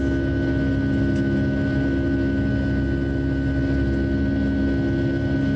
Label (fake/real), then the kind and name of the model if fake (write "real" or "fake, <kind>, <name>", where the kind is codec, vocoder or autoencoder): real